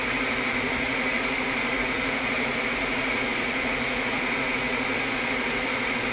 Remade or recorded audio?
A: remade